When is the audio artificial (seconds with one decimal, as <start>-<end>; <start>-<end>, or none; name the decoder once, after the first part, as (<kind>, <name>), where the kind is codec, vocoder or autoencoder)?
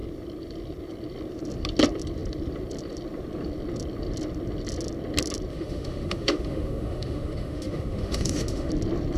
5.5-8.7 (autoencoder, DAC-VAE)